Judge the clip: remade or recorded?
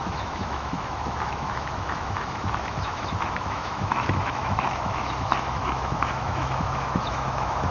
remade